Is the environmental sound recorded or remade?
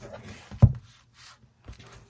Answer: recorded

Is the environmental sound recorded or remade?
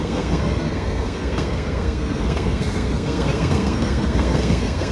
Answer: remade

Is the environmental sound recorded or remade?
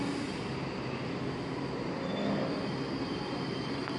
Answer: recorded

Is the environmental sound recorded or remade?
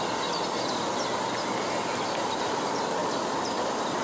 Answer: recorded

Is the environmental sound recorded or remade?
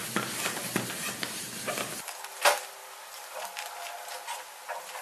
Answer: recorded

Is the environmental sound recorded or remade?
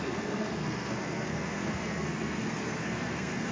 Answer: remade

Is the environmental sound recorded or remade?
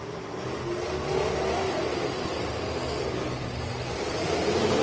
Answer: recorded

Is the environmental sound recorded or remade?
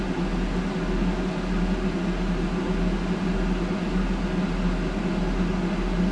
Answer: recorded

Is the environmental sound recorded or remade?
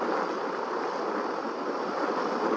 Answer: recorded